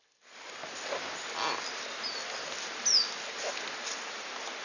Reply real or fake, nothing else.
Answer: real